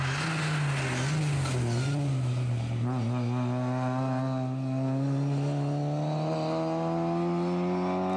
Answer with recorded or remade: recorded